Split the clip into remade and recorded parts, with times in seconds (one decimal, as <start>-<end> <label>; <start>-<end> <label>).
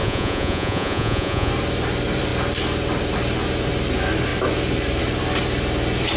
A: 0.0-1.5 remade; 1.5-6.2 recorded